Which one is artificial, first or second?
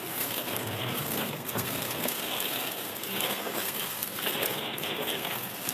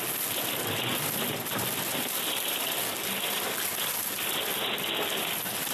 first